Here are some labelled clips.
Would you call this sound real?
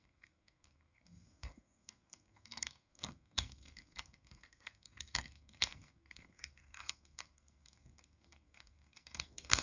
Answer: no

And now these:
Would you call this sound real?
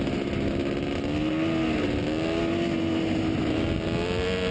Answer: yes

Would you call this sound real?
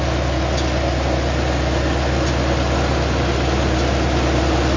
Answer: yes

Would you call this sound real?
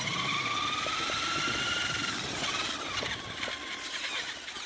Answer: yes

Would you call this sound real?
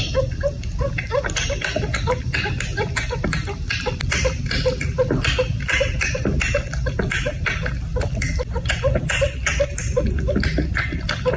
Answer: yes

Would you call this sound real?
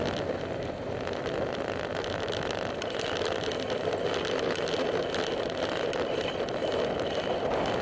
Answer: yes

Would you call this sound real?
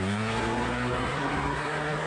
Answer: no